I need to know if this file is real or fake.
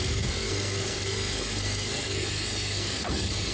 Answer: fake